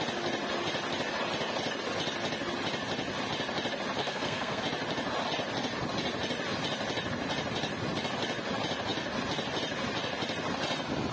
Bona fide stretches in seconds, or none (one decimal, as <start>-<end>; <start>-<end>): 0.0-4.0; 4.6-11.1